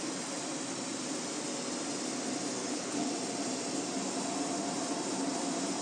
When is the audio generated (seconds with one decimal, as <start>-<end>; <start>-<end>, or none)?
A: 2.6-3.1